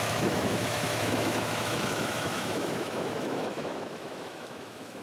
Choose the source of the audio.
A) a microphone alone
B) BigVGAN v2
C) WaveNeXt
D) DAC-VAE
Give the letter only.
D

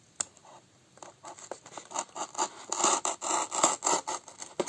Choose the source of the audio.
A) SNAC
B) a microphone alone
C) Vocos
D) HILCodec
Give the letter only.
B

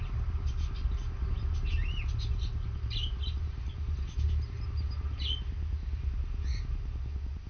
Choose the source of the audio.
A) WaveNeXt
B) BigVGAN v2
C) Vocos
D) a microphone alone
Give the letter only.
D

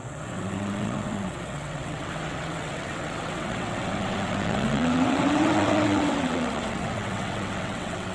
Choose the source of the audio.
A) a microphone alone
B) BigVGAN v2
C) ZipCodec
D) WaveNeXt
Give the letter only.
D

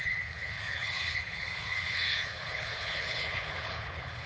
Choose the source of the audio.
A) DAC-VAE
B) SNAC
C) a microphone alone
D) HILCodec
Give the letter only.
D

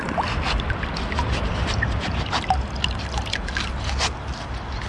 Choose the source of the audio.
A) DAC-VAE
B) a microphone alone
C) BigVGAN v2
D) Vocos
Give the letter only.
B